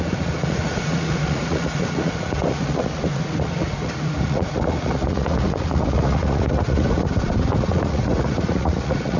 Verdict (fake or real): fake